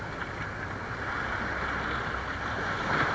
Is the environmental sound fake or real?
real